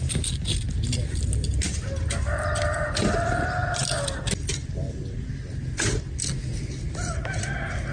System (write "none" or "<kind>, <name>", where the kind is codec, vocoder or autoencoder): none